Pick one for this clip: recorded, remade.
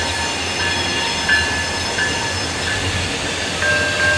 recorded